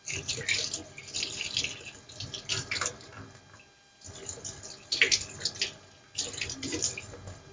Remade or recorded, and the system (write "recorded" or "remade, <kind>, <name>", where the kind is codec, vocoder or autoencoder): recorded